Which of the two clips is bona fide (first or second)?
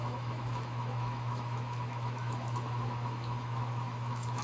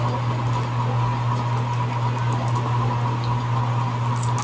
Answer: second